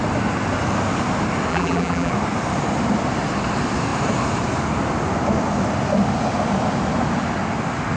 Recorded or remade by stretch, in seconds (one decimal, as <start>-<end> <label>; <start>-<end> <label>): 0.0-1.5 recorded; 1.5-2.1 remade; 2.1-8.0 recorded